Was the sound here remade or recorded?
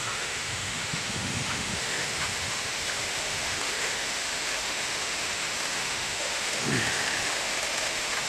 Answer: remade